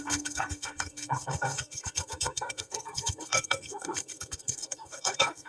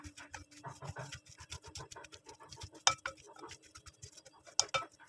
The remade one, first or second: first